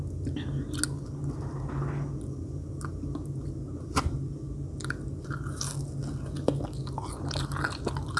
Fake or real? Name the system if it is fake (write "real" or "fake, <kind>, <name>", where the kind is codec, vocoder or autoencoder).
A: real